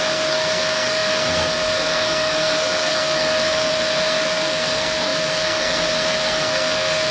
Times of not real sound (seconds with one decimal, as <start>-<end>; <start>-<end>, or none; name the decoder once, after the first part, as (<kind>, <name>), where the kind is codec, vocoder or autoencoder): 0.0-7.1 (codec, SNAC)